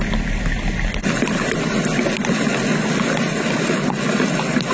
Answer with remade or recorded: recorded